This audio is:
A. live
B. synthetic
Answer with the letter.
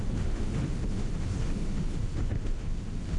B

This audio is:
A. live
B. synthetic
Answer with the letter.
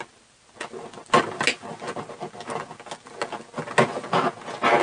A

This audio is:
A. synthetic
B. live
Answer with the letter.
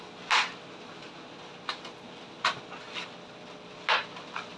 B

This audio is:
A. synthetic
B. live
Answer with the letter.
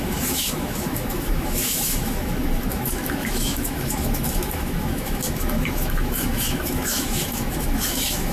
A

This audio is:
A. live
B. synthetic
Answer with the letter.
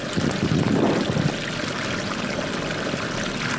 A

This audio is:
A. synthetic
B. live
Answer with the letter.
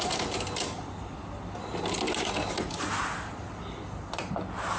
B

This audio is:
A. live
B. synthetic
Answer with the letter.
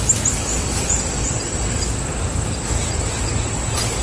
A